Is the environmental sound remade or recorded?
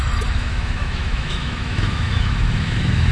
remade